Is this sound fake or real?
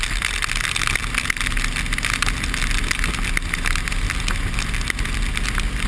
real